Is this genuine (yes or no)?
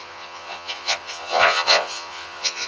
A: no